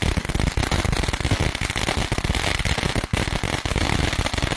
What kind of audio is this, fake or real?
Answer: real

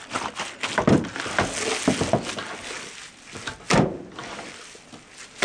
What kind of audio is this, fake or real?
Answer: real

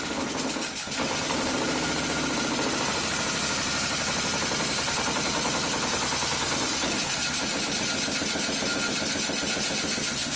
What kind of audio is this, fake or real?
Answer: real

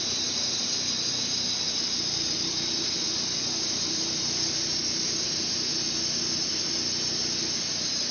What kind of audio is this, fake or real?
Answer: real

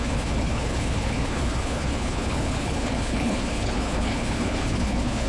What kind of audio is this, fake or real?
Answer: fake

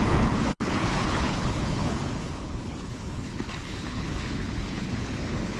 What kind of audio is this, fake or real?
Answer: fake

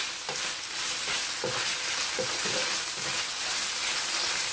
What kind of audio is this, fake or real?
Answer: real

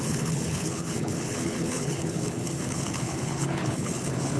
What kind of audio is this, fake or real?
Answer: fake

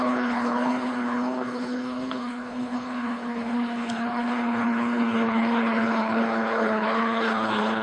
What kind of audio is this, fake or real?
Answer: fake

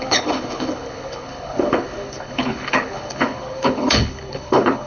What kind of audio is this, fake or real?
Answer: fake